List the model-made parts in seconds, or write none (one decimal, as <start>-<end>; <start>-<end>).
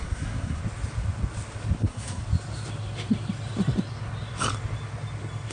0.0-0.6; 1.8-2.2